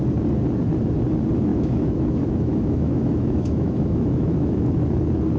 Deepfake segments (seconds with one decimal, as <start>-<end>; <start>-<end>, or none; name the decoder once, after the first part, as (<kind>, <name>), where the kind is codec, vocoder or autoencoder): 1.5-4.7 (autoencoder, DAC-VAE)